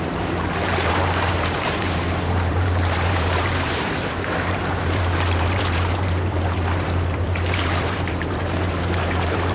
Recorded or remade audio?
remade